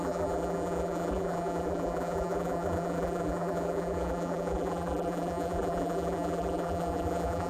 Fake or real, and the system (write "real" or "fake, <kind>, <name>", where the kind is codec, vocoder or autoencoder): fake, vocoder, BigVGAN v2